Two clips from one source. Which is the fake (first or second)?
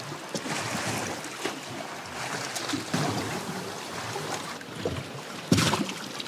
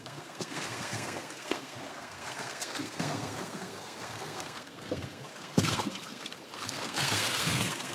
second